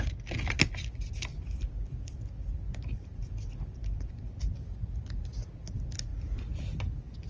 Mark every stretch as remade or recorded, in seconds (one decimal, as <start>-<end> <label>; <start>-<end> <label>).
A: 0.0-1.3 recorded; 1.3-4.1 remade; 4.1-6.1 recorded; 6.1-6.8 remade; 6.8-7.3 recorded